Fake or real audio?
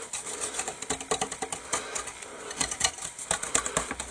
fake